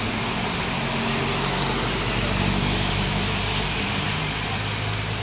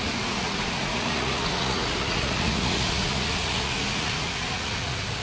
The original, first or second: first